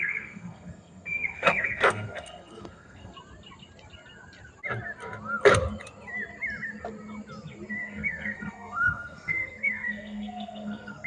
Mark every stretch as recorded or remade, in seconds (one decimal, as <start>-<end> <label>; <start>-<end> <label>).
0.0-3.1 remade; 3.1-7.7 recorded; 7.7-11.1 remade